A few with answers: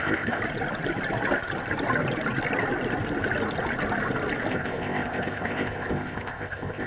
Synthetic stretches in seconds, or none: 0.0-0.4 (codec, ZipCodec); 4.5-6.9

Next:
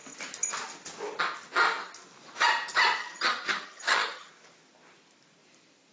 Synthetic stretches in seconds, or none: 3.0-4.3 (vocoder, HiFi-GAN)

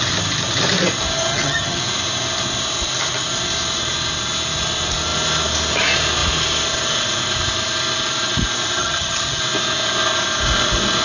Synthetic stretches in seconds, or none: 1.3-1.8 (vocoder, HiFi-GAN); 8.8-9.4

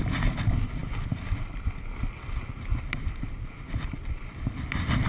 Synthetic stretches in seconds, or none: none

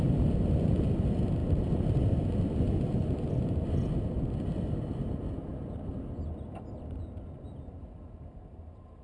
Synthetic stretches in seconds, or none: none

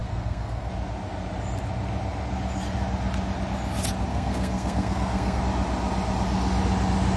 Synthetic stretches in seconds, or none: 0.0-0.7 (codec, SNAC); 4.1-5.4

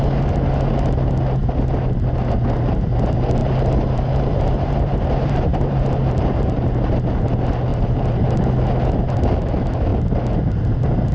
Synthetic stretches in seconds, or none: 3.4-7.0 (vocoder, BigVGAN v2); 7.7-8.5